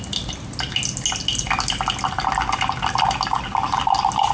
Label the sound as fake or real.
real